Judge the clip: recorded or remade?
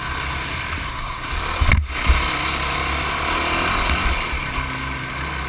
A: recorded